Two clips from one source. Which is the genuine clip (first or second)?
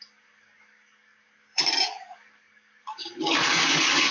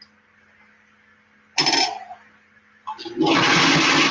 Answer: second